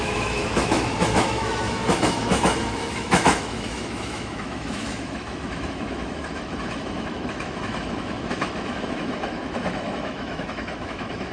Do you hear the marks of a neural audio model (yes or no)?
yes